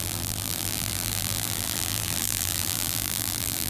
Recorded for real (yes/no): no